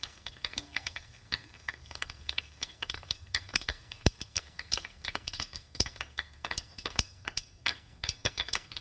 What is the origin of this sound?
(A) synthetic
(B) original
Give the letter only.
A